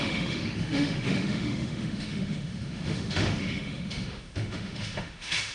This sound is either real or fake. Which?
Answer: fake